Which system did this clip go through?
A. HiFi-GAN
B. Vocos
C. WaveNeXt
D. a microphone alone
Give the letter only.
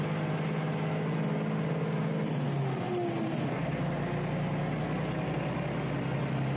D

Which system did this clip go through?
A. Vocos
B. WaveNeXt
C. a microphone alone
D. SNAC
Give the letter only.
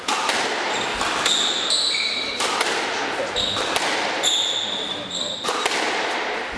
C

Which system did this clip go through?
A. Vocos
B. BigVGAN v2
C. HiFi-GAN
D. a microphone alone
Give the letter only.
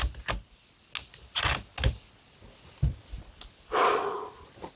D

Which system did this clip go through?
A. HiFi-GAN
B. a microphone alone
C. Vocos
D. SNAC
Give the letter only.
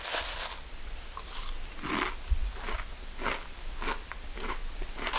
B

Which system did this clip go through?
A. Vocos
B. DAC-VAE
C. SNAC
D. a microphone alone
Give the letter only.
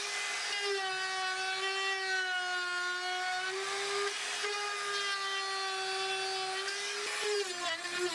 D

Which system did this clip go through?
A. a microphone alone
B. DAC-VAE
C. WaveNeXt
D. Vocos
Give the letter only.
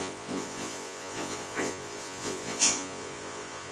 D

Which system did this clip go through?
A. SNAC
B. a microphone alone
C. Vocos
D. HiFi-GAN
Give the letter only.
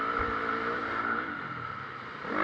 B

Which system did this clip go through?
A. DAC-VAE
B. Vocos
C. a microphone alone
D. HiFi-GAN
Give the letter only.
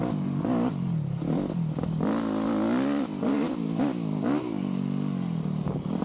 C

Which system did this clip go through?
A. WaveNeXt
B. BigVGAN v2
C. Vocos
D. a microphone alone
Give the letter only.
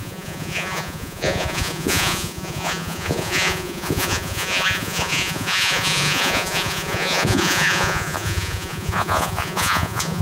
C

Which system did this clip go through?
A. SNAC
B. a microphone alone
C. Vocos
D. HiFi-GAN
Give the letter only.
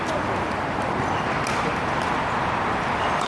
B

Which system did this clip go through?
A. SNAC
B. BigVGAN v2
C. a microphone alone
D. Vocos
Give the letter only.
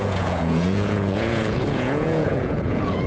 D